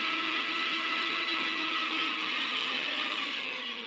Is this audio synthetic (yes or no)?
yes